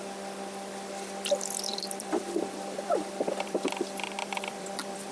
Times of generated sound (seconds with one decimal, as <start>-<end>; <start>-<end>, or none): 1.7-5.1